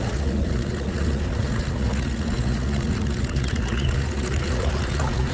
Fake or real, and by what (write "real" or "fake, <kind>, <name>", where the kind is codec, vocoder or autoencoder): fake, vocoder, Vocos